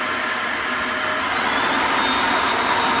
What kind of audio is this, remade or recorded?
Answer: recorded